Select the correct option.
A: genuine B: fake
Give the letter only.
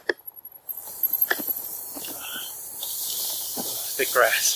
A